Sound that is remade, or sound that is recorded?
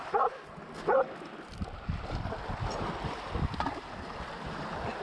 recorded